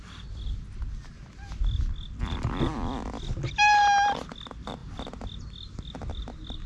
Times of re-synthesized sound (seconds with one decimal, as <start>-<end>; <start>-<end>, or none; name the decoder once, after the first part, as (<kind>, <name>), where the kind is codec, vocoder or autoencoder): none